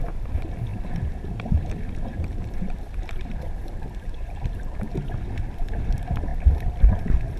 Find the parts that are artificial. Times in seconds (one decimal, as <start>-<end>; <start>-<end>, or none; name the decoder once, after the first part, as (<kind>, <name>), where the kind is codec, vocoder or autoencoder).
2.1-4.9 (vocoder, BigVGAN v2)